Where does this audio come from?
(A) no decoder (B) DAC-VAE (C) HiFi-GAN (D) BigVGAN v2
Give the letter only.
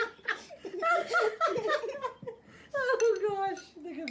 A